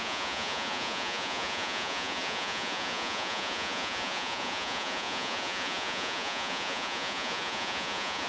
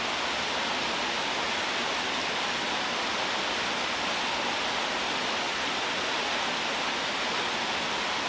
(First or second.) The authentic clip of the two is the second